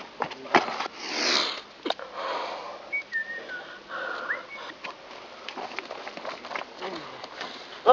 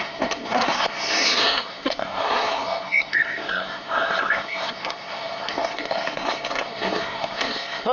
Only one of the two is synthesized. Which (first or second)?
second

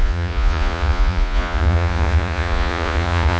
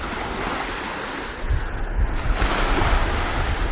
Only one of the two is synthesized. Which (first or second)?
first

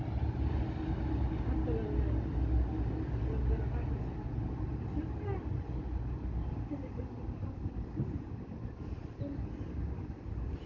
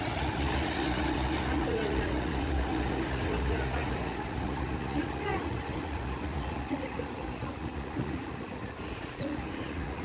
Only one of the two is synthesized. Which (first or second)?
second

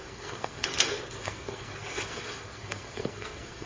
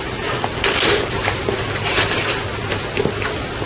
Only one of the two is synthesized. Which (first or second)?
first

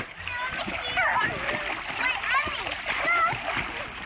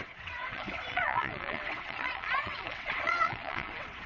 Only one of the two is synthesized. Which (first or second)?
second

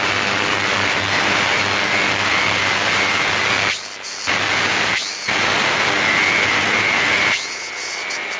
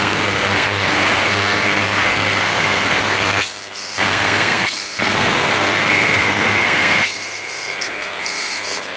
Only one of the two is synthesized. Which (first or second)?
second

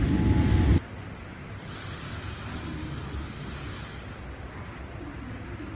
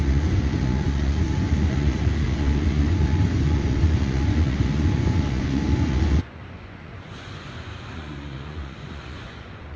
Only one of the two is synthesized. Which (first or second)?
second